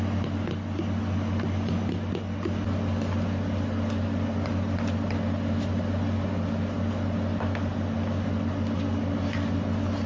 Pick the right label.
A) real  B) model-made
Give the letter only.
A